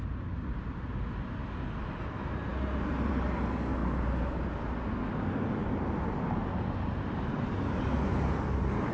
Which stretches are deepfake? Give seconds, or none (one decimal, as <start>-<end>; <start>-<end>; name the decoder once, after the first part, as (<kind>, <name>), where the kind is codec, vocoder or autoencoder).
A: none